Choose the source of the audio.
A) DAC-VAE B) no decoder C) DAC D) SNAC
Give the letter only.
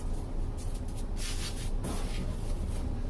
B